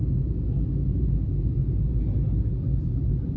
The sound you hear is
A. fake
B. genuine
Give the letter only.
B